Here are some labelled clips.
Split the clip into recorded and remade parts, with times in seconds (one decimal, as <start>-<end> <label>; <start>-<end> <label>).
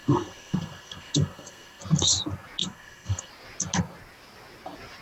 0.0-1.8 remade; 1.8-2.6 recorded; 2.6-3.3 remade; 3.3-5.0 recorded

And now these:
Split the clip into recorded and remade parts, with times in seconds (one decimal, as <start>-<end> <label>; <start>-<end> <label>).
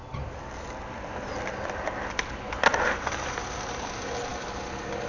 0.0-5.1 recorded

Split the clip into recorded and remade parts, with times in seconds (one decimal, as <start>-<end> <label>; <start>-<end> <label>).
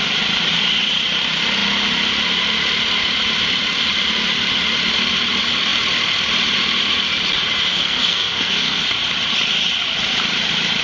0.0-7.7 recorded; 7.7-8.8 remade; 8.8-10.8 recorded